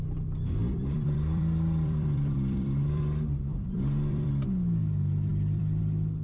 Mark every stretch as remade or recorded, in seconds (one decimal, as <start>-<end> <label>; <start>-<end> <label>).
0.0-0.6 recorded; 0.6-3.0 remade; 3.0-3.5 recorded; 3.5-4.3 remade; 4.3-5.3 recorded; 5.3-5.8 remade; 5.8-6.2 recorded